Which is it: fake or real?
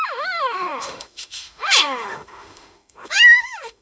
fake